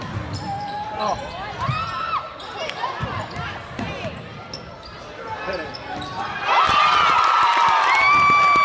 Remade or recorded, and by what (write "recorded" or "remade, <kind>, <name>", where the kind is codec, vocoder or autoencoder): recorded